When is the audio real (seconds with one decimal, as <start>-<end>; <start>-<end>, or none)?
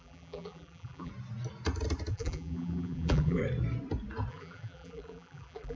1.1-2.1; 3.4-4.3